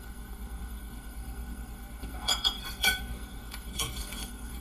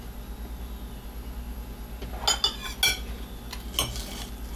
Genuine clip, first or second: second